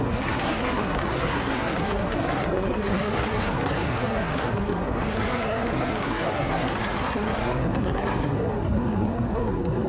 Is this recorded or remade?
remade